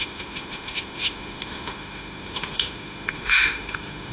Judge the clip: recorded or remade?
remade